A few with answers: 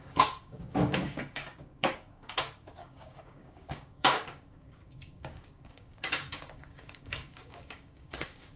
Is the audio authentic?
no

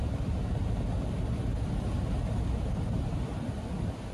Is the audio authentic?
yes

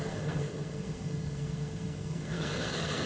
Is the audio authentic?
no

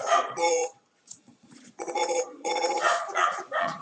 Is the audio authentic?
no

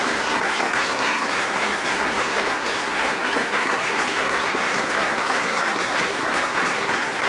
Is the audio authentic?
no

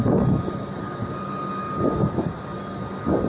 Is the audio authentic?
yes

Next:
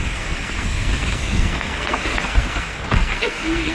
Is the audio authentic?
no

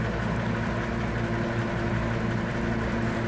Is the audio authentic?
yes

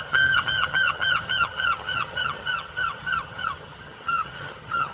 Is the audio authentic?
no